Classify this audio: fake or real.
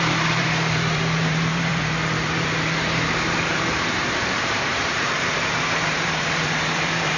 fake